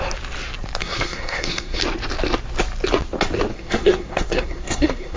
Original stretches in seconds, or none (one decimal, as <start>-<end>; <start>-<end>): 0.0-0.8; 1.8-3.5